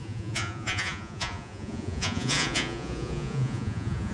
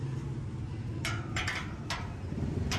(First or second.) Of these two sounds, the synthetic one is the first